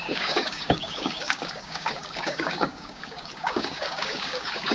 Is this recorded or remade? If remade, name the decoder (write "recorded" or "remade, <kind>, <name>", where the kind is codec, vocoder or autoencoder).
remade, codec, DAC